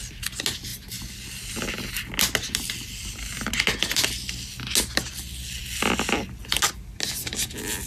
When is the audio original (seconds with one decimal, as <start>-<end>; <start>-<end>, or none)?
0.0-7.9